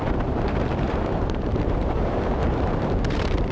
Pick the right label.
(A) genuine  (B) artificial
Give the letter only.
B